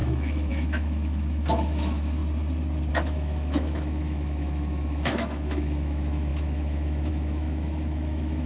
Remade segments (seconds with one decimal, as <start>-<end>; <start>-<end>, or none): 0.0-2.2; 2.9-8.5